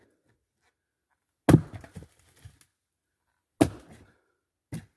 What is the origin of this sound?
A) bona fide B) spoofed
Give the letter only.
A